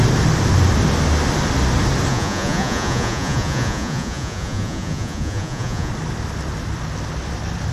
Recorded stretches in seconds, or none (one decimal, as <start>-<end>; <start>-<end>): 0.0-2.1; 5.9-7.7